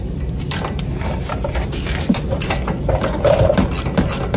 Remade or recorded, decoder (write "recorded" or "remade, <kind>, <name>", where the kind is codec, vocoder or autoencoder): remade, vocoder, BigVGAN v2